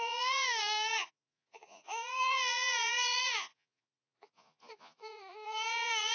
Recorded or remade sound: remade